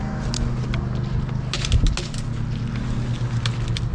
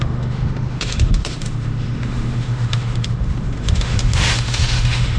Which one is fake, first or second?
second